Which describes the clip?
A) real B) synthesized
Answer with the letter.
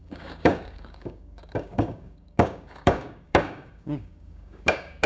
B